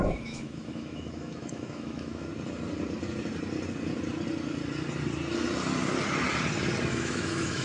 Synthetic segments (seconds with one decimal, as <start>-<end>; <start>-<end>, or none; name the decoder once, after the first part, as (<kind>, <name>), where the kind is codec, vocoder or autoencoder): 0.0-2.3 (autoencoder, DAC-VAE); 6.9-7.6